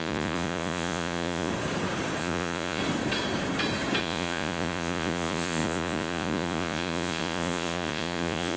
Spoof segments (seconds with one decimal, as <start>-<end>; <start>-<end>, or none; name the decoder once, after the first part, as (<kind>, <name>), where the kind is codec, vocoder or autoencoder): 0.0-1.5 (vocoder, Vocos); 2.2-2.8; 4.0-8.6